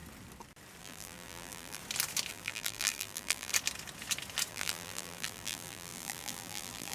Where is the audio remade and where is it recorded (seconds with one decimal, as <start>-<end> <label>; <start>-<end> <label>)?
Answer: 0.0-0.8 recorded; 0.8-1.8 remade; 1.8-2.3 recorded; 2.3-3.5 remade; 3.5-4.5 recorded; 4.5-6.9 remade